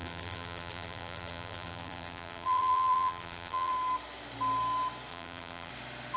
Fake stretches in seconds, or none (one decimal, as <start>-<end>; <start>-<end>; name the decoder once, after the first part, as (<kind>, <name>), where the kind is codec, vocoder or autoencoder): 0.0-3.7 (vocoder, BigVGAN v2); 5.1-5.7